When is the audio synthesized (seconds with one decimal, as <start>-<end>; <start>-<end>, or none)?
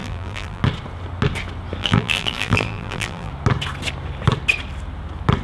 0.0-0.6; 1.8-3.3